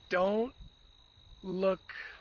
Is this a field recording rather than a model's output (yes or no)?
yes